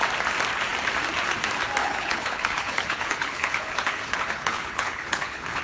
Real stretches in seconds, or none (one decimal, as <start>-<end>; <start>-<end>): 0.0-1.8